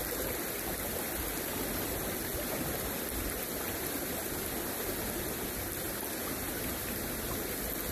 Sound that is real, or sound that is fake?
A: real